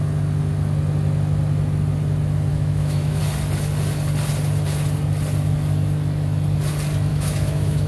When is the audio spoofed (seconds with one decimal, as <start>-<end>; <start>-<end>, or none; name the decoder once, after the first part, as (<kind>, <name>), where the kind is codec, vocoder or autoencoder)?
2.5-3.2 (autoencoder, DAC-VAE); 7.1-7.9